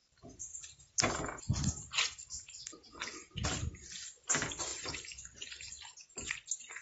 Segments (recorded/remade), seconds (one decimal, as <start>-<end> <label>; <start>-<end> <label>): 0.0-3.1 remade; 3.1-4.3 recorded; 4.3-6.8 remade